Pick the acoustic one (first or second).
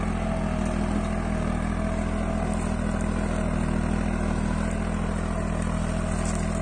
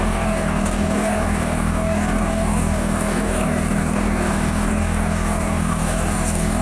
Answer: first